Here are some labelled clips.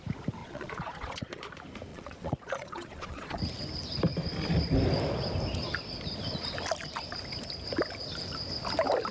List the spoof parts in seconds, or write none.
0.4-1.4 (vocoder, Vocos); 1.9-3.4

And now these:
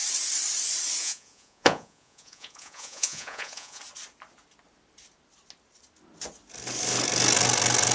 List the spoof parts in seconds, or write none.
1.0-3.8 (vocoder, Vocos)

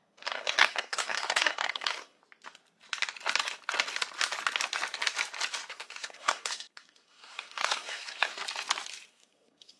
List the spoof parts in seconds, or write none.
0.0-2.2 (codec, SNAC); 5.7-8.3; 9.1-9.8

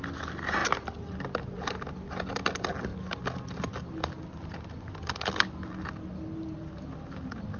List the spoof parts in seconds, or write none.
none

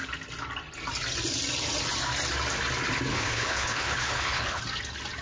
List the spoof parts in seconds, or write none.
3.1-4.6 (codec, HILCodec)

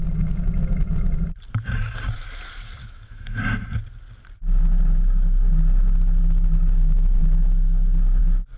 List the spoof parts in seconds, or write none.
2.8-3.4 (autoencoder, DAC-VAE)

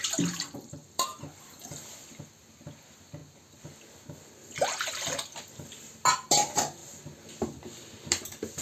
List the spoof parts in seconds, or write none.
0.8-2.2 (vocoder, BigVGAN v2); 6.8-7.4